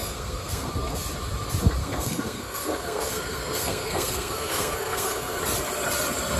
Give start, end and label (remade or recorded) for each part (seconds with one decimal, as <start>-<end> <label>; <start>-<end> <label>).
0.0-0.7 remade; 0.7-1.8 recorded; 1.8-5.4 remade; 5.4-6.4 recorded